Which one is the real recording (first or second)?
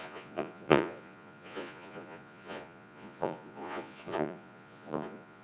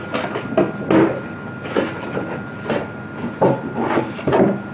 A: second